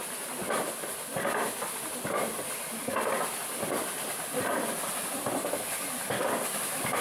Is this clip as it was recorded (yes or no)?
yes